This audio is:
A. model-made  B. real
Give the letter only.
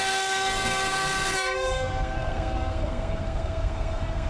A